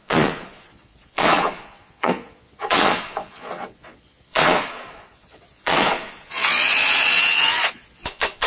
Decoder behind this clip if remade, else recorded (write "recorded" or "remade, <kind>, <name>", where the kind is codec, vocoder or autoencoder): remade, vocoder, Vocos